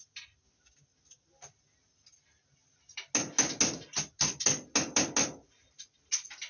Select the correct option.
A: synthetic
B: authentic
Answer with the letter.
B